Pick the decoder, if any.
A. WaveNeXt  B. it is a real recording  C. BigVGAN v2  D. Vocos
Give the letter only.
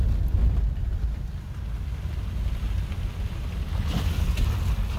B